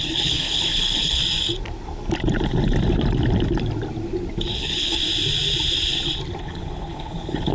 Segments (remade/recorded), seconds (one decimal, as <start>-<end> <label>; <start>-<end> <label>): 0.0-1.2 remade; 1.2-4.5 recorded; 4.5-5.0 remade; 5.0-6.4 recorded; 6.4-7.5 remade